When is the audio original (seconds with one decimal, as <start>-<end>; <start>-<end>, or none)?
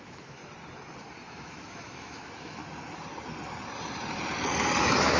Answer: 0.4-1.3; 2.6-4.8